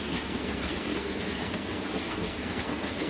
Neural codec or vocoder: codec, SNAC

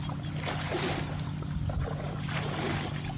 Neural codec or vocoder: none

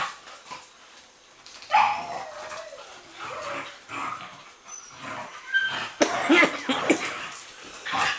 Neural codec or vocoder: none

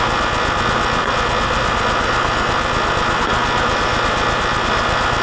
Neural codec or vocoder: none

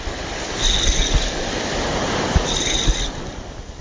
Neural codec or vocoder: none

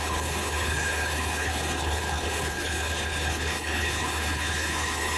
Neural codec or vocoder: codec, HILCodec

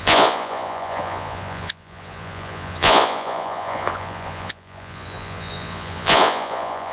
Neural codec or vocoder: vocoder, Vocos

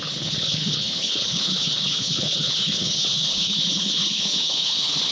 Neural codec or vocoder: codec, HILCodec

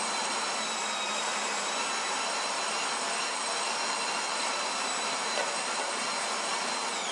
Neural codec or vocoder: vocoder, BigVGAN v2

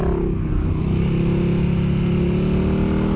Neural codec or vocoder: none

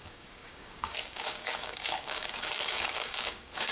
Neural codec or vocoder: codec, DAC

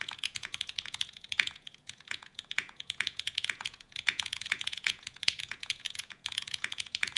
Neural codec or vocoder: vocoder, Vocos